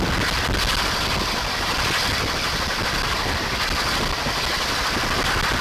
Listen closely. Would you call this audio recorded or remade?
recorded